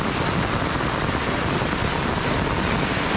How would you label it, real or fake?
real